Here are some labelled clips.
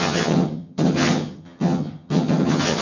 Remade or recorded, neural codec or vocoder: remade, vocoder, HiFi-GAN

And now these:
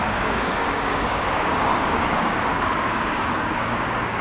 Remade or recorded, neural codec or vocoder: remade, codec, DAC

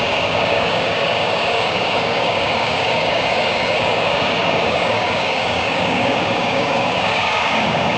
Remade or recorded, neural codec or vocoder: remade, codec, DAC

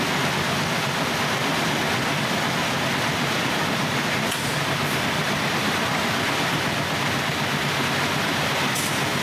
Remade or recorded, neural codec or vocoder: recorded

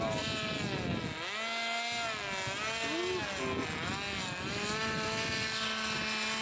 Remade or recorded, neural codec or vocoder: recorded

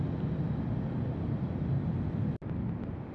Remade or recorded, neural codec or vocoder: recorded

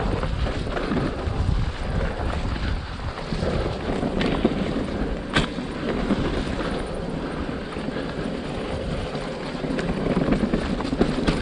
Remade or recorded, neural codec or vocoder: recorded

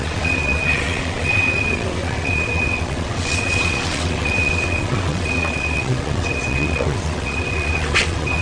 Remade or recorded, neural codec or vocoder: remade, vocoder, WaveNeXt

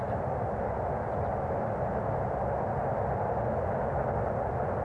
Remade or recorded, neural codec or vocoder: recorded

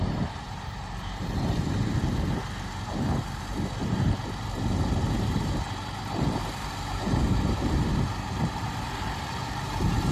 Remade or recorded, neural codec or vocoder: remade, vocoder, BigVGAN v2